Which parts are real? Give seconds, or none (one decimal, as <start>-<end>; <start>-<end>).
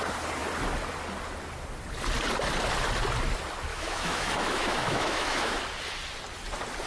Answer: 0.0-3.7; 5.6-6.9